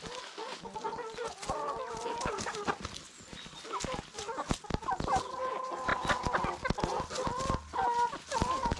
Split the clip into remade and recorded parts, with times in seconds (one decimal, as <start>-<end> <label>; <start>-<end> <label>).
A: 0.0-8.8 recorded